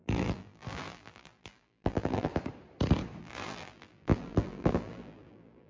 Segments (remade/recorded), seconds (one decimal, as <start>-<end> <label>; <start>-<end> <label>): 0.0-2.3 remade; 2.3-3.2 recorded; 3.2-5.7 remade